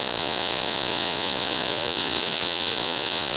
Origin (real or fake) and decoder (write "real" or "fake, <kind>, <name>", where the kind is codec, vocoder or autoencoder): fake, vocoder, Vocos